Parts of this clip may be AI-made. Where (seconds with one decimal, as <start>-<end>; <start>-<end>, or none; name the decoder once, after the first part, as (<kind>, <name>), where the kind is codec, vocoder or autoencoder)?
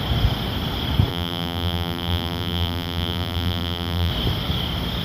1.1-4.1 (vocoder, BigVGAN v2)